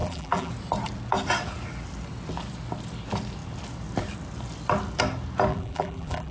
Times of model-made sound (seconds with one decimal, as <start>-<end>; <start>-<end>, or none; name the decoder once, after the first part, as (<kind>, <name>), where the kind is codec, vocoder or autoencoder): 0.0-0.5 (vocoder, BigVGAN v2); 5.5-6.3